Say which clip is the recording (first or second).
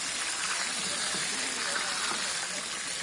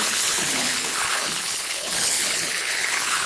first